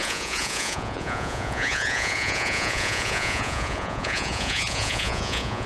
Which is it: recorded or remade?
remade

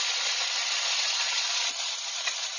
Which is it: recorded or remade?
remade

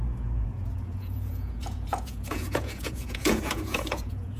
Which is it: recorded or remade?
remade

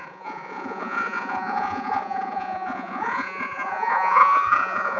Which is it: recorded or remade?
remade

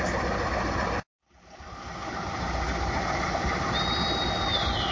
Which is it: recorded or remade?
recorded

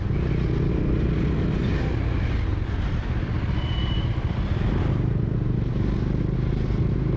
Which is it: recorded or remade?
recorded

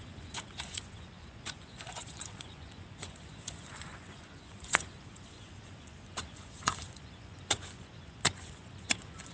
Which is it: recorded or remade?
remade